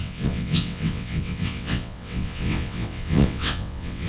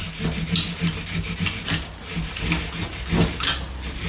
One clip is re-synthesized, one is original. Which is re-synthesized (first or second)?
first